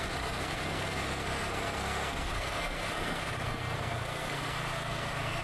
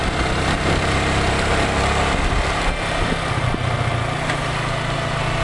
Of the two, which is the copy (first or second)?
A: first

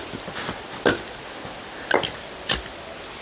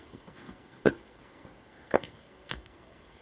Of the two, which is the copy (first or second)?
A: second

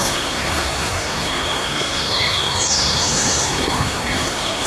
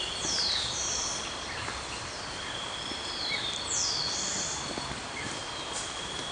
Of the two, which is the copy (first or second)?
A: first